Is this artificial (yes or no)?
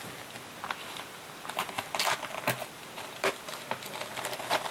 no